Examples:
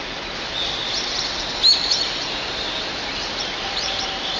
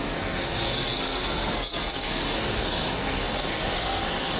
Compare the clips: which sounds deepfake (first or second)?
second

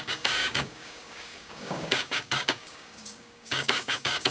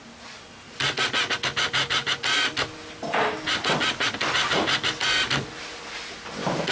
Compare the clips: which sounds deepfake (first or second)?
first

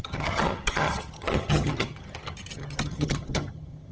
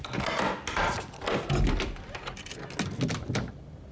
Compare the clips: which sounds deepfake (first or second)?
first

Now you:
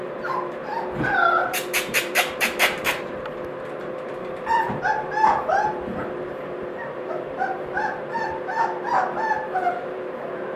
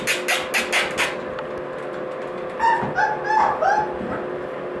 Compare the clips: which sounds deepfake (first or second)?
first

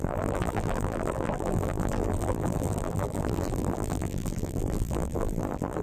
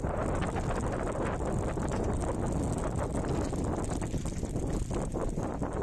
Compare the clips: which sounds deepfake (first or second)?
first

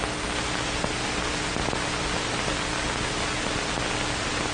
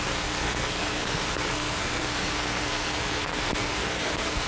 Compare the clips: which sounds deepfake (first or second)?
second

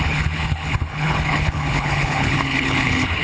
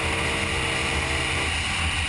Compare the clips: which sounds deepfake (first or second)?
first